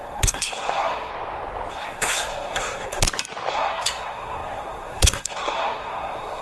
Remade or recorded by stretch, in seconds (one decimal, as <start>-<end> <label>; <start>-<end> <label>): 0.0-1.1 remade; 1.1-1.7 recorded; 1.7-3.0 remade; 3.0-3.5 recorded; 3.5-6.4 remade